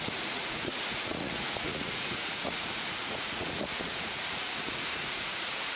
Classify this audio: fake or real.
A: fake